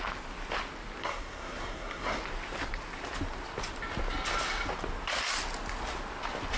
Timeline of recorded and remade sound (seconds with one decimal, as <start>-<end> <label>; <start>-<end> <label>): 0.0-1.0 recorded; 1.0-2.2 remade; 2.2-6.6 recorded